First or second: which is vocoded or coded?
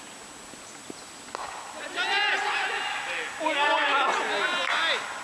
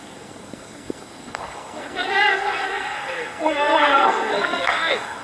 second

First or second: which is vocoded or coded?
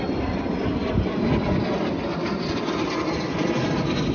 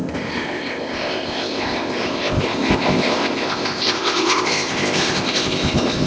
second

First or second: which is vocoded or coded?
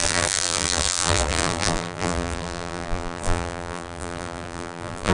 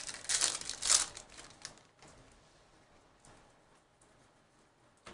first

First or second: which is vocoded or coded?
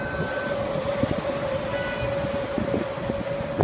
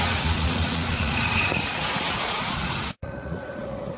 second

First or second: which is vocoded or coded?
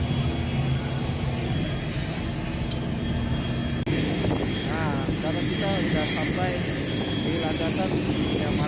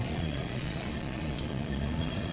second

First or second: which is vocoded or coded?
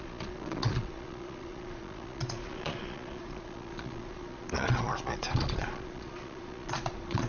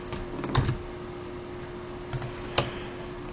first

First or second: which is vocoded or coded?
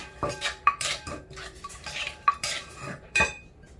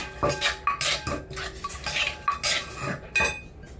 first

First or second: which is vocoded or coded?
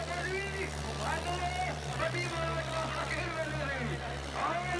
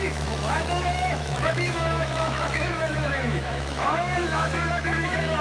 second